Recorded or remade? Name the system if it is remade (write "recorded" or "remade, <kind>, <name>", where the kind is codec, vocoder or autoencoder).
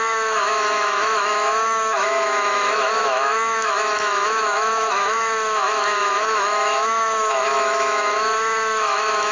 remade, autoencoder, DAC-VAE